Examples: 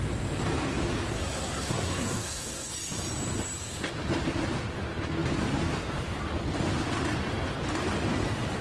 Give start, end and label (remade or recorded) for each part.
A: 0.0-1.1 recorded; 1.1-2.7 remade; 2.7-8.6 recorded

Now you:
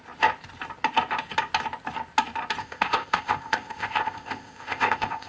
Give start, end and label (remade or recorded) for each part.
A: 0.0-2.6 recorded; 2.6-5.3 remade

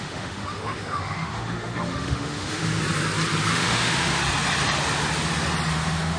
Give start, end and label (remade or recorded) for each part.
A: 0.0-2.7 remade; 2.7-3.5 recorded; 3.5-4.2 remade; 4.2-5.7 recorded; 5.7-6.2 remade